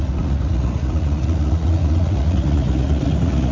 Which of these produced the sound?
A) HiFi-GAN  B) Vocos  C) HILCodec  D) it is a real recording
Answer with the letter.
B